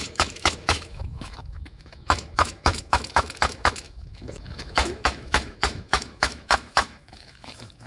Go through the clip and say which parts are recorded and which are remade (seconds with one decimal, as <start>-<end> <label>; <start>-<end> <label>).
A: 0.0-7.9 remade